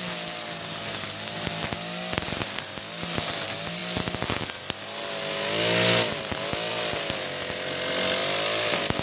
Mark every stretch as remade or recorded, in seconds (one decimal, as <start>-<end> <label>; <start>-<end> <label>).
0.0-9.0 recorded

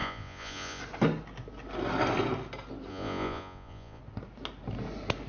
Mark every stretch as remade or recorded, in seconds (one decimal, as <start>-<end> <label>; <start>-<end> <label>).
0.0-0.8 remade; 0.8-2.9 recorded; 2.9-4.0 remade; 4.0-5.3 recorded

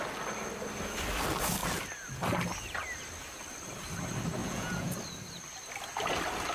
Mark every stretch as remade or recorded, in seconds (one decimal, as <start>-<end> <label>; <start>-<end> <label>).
0.0-4.4 recorded; 4.4-4.9 remade; 4.9-6.5 recorded

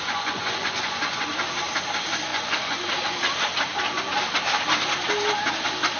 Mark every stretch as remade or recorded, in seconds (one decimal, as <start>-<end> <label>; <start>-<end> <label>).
0.0-1.3 remade; 1.3-2.3 recorded; 2.3-2.9 remade; 2.9-6.0 recorded

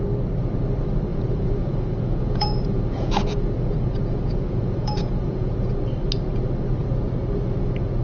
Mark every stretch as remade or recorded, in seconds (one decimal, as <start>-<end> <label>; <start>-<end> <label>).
0.0-1.1 recorded; 1.1-5.7 remade; 5.7-8.0 recorded